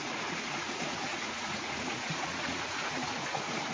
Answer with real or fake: fake